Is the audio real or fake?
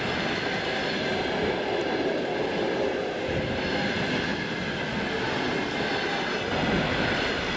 real